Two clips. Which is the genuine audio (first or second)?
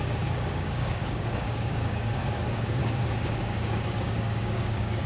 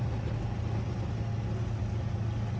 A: second